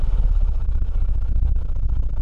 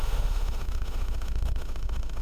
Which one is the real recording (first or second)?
first